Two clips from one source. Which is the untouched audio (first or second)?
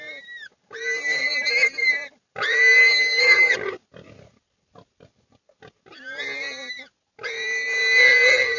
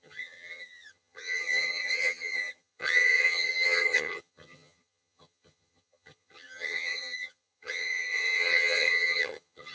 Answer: first